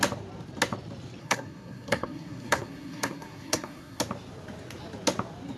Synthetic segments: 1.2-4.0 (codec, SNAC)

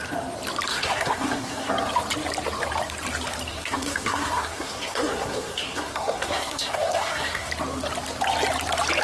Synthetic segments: 0.7-1.7 (codec, SNAC); 3.5-7.5